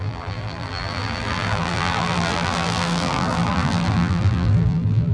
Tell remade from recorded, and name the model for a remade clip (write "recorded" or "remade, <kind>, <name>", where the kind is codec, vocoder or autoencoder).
remade, vocoder, BigVGAN v2